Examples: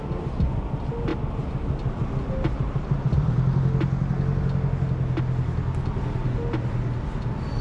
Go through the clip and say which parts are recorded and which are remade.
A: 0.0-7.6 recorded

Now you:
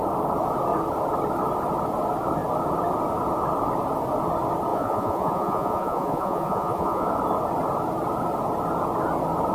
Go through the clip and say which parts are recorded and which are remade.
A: 0.0-4.7 recorded; 4.7-7.1 remade; 7.1-9.5 recorded

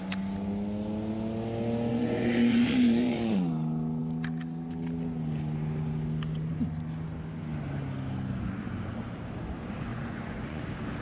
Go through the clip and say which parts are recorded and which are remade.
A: 0.0-1.9 recorded; 1.9-3.5 remade; 3.5-9.9 recorded; 9.9-10.6 remade; 10.6-11.0 recorded